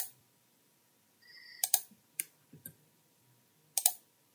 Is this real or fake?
fake